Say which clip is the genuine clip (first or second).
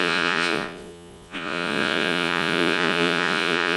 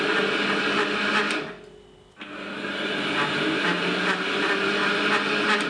second